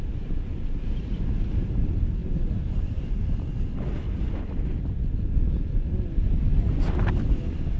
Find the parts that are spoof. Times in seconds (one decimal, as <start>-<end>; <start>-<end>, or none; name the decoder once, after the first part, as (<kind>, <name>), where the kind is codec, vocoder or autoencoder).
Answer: none